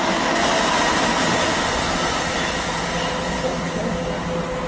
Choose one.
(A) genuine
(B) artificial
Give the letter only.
A